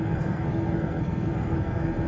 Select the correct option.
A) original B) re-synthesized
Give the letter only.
B